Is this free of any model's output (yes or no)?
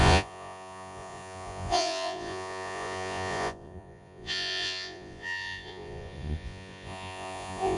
no